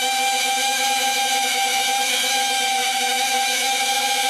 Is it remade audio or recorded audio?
remade